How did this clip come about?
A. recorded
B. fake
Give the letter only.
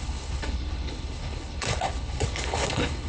B